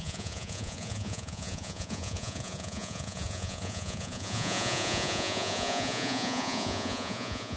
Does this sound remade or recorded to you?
remade